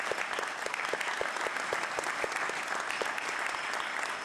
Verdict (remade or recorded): recorded